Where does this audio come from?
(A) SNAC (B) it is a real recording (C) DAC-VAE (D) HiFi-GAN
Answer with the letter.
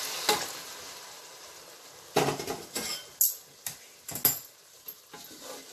B